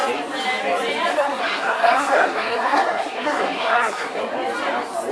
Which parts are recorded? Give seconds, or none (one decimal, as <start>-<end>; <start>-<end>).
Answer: 0.0-1.1; 4.2-5.1